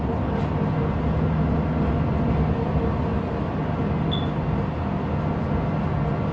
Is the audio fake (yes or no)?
no